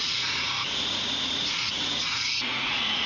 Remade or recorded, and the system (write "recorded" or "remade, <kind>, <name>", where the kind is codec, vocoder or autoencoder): remade, vocoder, Vocos